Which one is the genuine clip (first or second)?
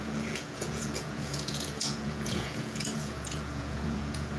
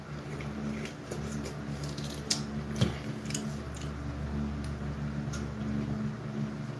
second